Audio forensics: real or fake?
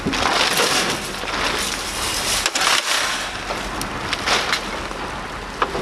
real